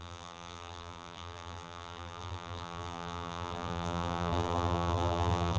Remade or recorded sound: remade